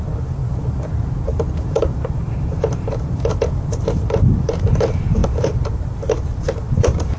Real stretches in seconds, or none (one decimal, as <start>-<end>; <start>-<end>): none